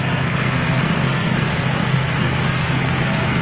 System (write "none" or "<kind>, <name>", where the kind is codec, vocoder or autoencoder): codec, SNAC